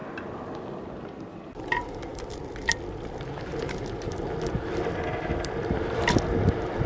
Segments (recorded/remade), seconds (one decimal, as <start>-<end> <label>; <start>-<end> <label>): 0.0-2.1 recorded; 2.1-6.2 remade; 6.2-6.9 recorded